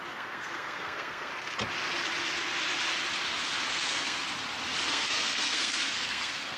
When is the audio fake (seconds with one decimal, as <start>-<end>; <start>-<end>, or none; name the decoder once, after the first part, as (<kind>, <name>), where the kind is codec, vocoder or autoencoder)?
0.0-1.3 (codec, SNAC); 3.7-4.2; 4.9-6.6